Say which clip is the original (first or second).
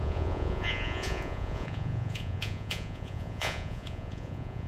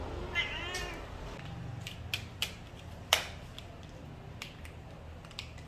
second